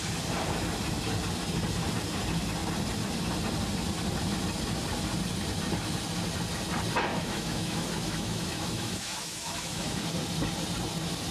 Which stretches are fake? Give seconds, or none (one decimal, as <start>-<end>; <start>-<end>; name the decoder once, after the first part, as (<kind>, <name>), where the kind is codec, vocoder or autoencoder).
7.1-10.0 (autoencoder, DAC-VAE)